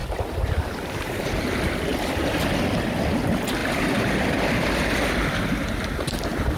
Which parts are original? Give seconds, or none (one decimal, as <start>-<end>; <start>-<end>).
1.3-1.9; 2.5-3.6; 5.4-6.6